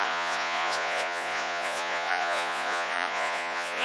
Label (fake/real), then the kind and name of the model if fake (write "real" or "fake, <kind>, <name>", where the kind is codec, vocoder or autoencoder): fake, vocoder, Vocos